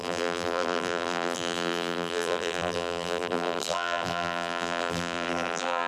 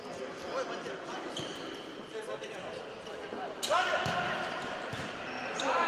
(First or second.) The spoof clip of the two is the first